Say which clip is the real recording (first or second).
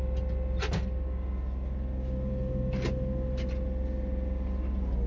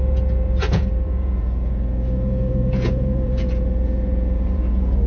first